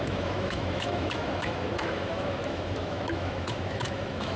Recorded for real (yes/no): no